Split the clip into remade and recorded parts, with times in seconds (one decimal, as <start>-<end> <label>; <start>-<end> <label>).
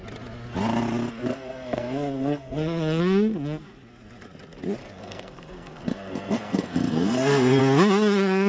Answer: 0.0-1.3 recorded; 1.3-3.0 remade; 3.0-4.8 recorded; 4.8-7.6 remade; 7.6-8.5 recorded